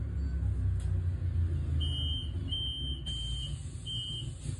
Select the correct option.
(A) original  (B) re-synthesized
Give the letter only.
A